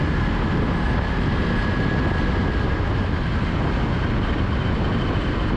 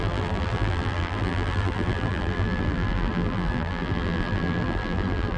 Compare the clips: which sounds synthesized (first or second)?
second